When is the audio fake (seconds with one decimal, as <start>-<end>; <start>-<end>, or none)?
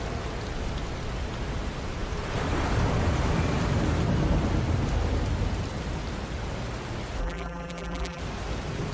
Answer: 7.2-8.2